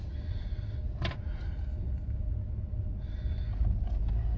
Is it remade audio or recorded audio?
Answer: recorded